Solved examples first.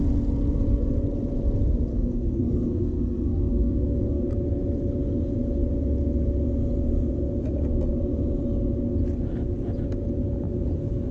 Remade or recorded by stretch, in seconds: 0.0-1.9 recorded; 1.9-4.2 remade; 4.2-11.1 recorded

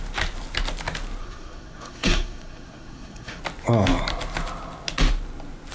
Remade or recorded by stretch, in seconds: 0.0-1.2 recorded; 1.2-3.4 remade; 3.4-5.7 recorded

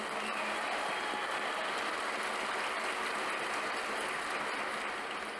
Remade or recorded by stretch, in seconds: 0.0-5.4 recorded